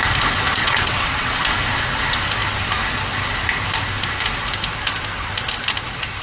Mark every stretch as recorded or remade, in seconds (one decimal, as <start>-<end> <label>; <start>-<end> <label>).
0.0-0.6 recorded; 0.6-1.4 remade; 1.4-6.2 recorded